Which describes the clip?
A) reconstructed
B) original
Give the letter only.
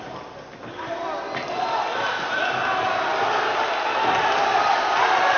B